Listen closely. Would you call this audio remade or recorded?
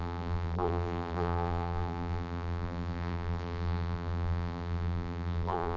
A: remade